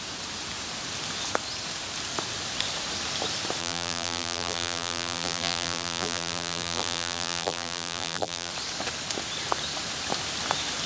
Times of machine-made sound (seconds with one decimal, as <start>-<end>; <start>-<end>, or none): 3.6-8.5

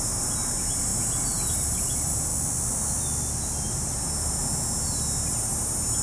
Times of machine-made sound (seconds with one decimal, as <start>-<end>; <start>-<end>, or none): 0.0-2.3; 3.7-4.4; 5.3-6.0